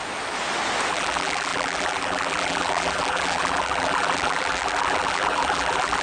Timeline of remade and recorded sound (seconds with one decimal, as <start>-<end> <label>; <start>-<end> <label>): 0.0-0.9 recorded; 0.9-6.0 remade